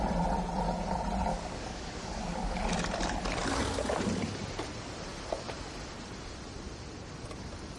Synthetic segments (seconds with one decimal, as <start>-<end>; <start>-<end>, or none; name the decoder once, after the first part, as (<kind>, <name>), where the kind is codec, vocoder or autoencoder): 1.3-2.6 (codec, DAC)